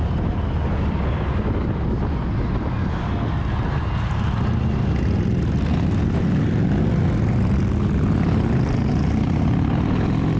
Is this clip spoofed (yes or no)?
no